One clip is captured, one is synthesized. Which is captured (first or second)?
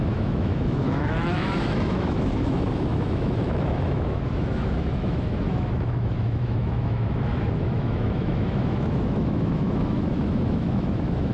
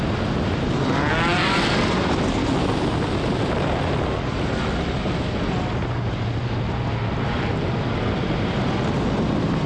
second